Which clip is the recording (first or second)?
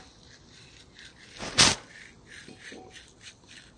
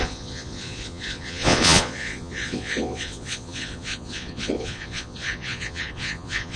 first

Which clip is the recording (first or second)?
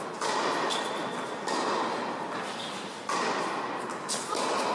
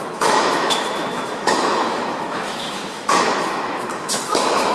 first